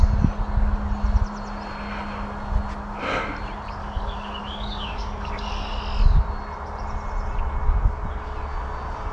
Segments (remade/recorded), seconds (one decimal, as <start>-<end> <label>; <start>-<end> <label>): 0.0-3.8 recorded; 3.8-5.8 remade; 5.8-9.1 recorded

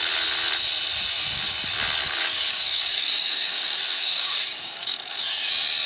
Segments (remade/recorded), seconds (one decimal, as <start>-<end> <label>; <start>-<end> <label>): 0.0-2.0 recorded; 2.0-5.5 remade; 5.5-5.9 recorded